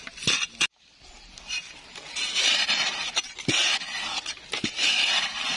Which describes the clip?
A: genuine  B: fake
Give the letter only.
A